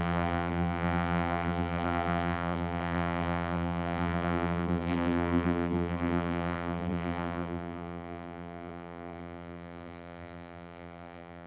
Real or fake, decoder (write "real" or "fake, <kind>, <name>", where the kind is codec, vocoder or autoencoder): fake, vocoder, BigVGAN v2